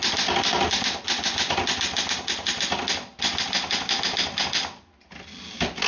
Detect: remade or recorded recorded